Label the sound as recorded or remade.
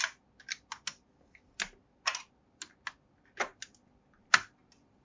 recorded